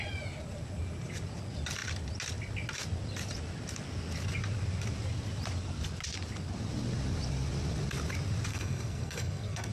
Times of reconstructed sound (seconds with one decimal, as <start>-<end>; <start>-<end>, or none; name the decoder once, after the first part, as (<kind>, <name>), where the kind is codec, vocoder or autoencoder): 8.5-9.7 (codec, SNAC)